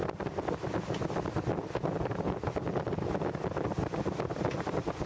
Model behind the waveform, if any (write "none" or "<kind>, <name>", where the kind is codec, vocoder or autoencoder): none